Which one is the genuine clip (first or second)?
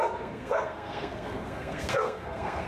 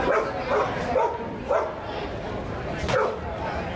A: second